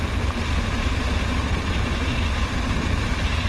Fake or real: real